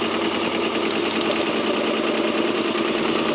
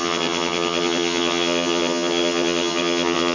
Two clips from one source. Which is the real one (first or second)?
first